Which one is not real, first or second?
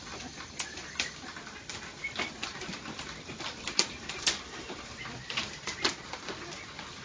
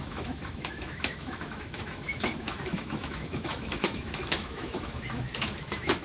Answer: second